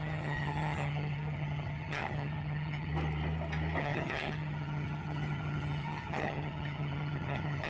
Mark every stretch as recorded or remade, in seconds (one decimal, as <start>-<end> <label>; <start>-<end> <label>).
0.0-2.9 remade; 2.9-3.8 recorded; 3.8-7.7 remade